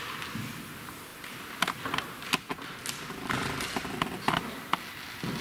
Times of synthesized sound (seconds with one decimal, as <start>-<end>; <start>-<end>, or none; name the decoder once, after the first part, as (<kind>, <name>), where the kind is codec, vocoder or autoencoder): none